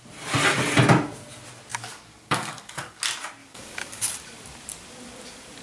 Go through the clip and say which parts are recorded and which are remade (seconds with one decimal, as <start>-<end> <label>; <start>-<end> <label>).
0.0-1.7 recorded; 1.7-3.0 remade; 3.0-3.4 recorded; 3.4-4.1 remade; 4.1-5.6 recorded